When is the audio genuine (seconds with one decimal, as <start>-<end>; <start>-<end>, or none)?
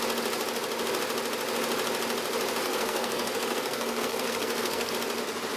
0.0-2.6; 4.9-5.6